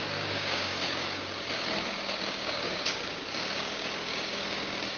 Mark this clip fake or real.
fake